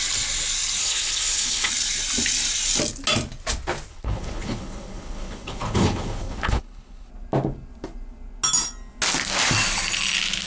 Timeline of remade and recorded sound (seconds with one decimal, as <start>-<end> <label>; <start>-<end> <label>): 0.0-0.8 recorded; 0.8-1.7 remade; 1.7-3.9 recorded; 3.9-7.1 remade; 7.1-10.5 recorded